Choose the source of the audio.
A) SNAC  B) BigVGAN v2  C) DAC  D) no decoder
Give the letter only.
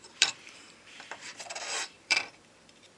B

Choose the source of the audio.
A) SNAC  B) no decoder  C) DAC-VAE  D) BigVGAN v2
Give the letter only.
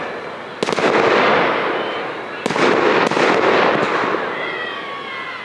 B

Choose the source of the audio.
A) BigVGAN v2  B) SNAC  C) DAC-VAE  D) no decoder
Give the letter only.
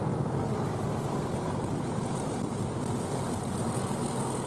D